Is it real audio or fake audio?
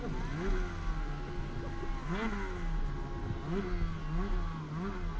real